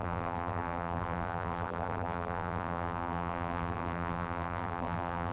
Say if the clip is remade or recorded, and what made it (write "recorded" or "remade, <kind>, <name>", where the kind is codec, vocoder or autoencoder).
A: remade, vocoder, BigVGAN v2